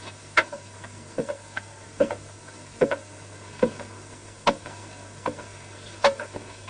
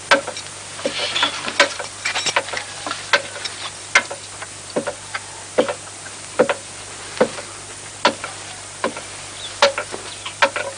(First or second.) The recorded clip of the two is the second